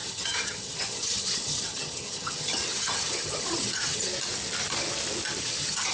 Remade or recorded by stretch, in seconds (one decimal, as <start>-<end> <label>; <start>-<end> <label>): 0.0-4.1 remade; 4.1-5.4 recorded; 5.4-5.9 remade